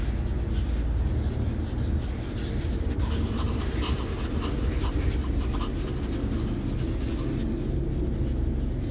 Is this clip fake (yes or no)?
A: no